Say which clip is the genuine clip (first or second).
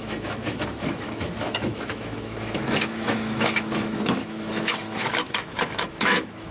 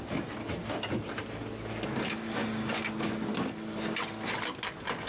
second